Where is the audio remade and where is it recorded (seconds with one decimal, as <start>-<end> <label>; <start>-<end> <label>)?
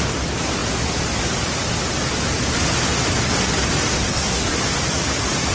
0.0-4.1 recorded; 4.1-4.6 remade; 4.6-5.5 recorded